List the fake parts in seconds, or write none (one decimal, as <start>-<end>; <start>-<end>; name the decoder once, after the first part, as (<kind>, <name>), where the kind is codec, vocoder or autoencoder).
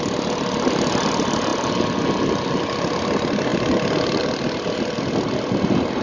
none